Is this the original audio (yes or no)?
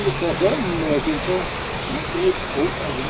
no